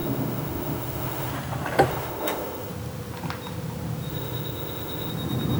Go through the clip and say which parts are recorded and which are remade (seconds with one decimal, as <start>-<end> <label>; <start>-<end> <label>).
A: 0.0-1.3 remade; 1.3-1.9 recorded; 1.9-2.7 remade; 2.7-4.1 recorded; 4.1-5.1 remade; 5.1-5.6 recorded